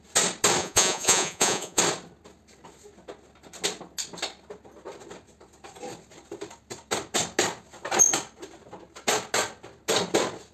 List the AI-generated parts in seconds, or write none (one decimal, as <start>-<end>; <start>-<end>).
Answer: 0.6-1.8